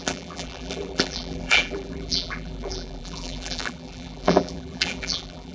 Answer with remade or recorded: remade